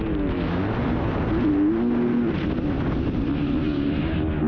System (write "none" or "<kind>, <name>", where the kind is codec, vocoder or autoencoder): none